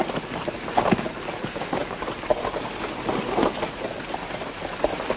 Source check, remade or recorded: recorded